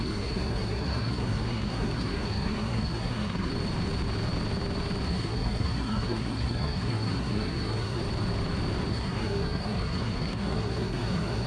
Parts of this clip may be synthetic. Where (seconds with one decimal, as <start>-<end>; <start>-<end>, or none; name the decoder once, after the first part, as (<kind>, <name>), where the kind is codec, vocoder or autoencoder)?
0.0-3.5 (codec, SNAC); 5.1-8.0; 8.9-11.5